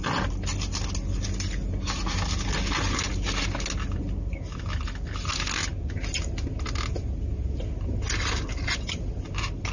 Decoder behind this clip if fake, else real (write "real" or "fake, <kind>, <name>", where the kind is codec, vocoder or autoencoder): real